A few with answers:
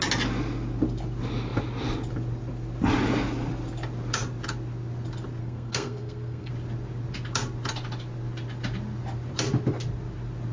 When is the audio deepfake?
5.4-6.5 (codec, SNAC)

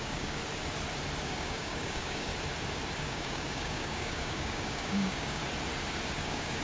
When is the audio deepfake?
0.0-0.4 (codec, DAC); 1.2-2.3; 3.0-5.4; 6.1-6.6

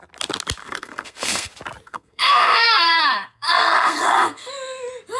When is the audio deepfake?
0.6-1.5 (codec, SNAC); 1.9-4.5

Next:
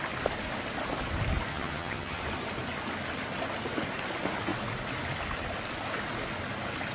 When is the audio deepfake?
1.5-2.2 (vocoder, HiFi-GAN)

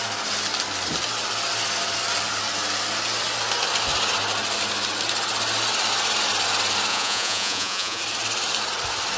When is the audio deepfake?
6.9-8.0 (vocoder, Vocos)

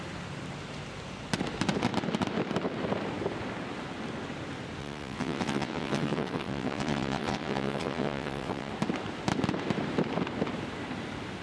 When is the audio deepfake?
4.8-8.7 (vocoder, WaveNeXt)

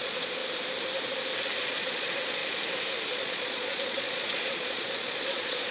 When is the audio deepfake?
0.0-0.4 (vocoder, Vocos); 1.6-2.4; 3.1-5.7

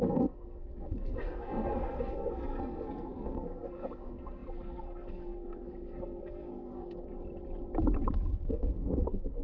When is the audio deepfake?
0.0-7.1 (codec, SNAC); 8.5-9.4